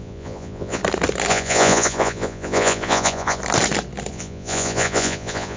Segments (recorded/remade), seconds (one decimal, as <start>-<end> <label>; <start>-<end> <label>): 0.0-0.8 remade; 0.8-1.3 recorded; 1.3-3.4 remade; 3.4-4.1 recorded; 4.1-5.6 remade